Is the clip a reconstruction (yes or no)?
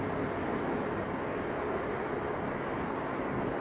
no